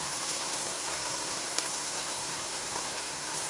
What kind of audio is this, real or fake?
fake